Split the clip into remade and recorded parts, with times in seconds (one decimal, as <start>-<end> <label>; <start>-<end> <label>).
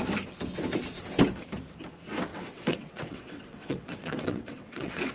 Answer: 0.0-2.3 recorded; 2.3-5.1 remade